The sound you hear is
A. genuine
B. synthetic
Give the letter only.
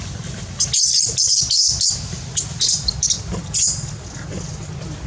A